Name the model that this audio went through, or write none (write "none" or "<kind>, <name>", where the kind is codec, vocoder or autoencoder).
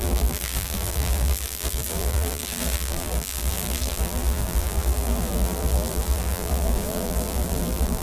vocoder, BigVGAN v2